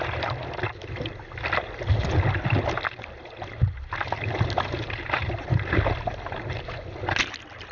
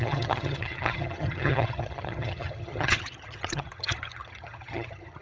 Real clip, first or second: first